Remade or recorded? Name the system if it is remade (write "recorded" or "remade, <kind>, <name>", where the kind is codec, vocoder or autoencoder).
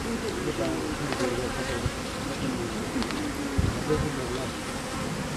recorded